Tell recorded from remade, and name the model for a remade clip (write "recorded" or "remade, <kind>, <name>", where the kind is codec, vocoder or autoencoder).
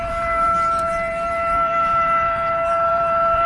remade, vocoder, BigVGAN v2